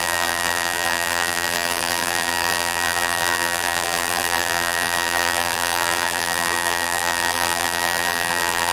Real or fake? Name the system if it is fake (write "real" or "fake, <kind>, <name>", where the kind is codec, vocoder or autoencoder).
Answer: fake, vocoder, BigVGAN v2